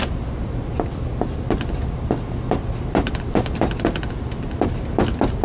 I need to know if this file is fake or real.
real